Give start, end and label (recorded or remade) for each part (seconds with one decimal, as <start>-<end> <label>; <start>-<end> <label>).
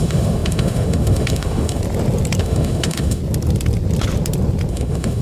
0.0-1.8 remade; 1.8-2.4 recorded; 2.4-3.2 remade; 3.2-4.7 recorded; 4.7-5.2 remade